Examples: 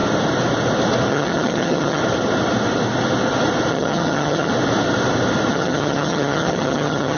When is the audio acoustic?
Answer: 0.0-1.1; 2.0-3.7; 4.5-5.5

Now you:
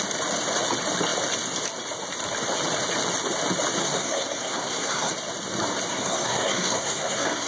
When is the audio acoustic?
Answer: 0.0-3.8; 5.1-5.9

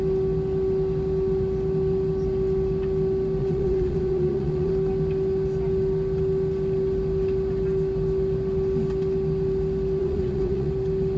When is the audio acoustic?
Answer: 0.0-3.4; 4.7-10.0; 10.7-11.2

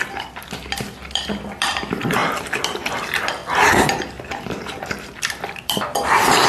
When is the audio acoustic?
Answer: 2.2-2.8; 3.4-5.1

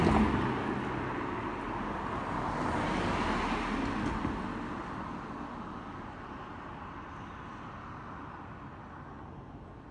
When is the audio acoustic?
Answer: 0.0-9.9

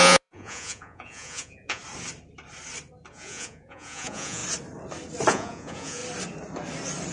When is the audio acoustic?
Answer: 1.8-3.1; 4.4-5.3; 6.0-7.1

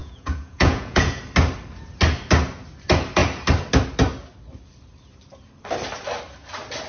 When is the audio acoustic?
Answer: 1.2-6.9